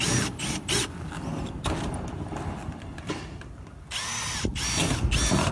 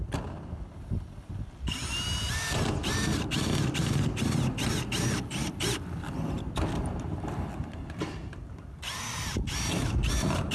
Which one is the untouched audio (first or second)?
first